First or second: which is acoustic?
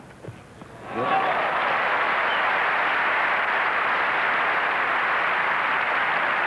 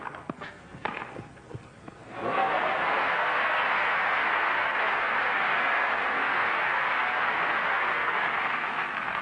first